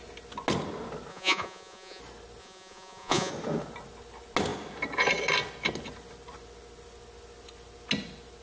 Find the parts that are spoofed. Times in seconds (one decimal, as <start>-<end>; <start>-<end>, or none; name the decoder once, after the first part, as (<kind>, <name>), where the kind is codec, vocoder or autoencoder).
1.1-2.0 (vocoder, Vocos); 2.4-3.3